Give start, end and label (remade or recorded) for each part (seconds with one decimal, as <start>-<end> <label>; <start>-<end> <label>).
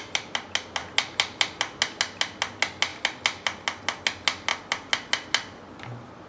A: 0.0-6.3 recorded